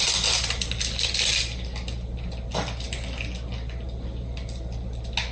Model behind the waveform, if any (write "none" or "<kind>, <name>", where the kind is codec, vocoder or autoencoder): none